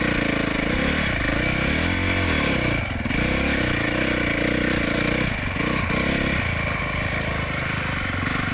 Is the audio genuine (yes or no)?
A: yes